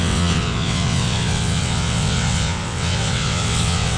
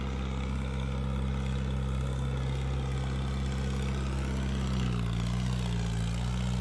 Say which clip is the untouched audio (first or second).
second